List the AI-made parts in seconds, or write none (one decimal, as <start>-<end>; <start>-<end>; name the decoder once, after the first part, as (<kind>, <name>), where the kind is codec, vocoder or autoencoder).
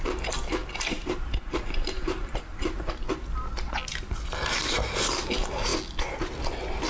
0.6-2.8 (vocoder, BigVGAN v2)